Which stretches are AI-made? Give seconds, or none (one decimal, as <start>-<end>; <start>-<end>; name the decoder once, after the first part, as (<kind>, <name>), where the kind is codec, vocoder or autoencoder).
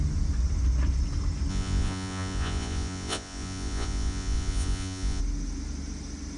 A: 1.5-5.2 (vocoder, Vocos)